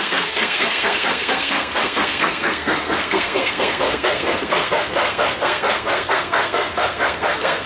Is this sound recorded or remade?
remade